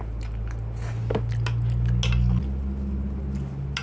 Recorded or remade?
recorded